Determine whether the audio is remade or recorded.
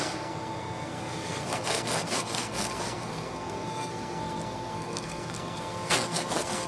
remade